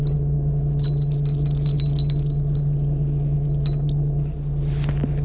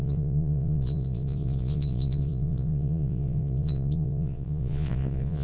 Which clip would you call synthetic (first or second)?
second